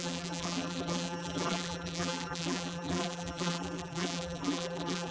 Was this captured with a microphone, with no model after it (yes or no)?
no